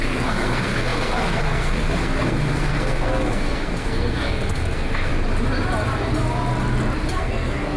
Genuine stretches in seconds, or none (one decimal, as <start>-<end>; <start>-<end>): 5.1-7.1